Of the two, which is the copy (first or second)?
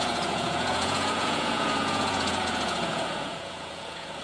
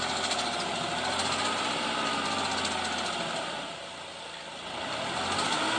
first